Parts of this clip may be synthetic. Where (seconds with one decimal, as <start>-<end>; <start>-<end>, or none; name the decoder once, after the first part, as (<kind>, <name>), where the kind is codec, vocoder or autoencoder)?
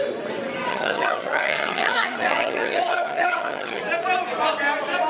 0.7-3.8 (vocoder, HiFi-GAN)